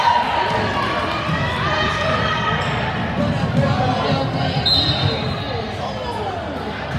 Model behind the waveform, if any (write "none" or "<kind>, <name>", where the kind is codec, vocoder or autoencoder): none